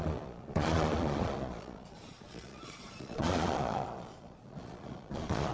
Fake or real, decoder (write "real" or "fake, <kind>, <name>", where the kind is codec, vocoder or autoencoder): fake, vocoder, Vocos